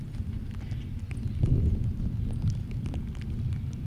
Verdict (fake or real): real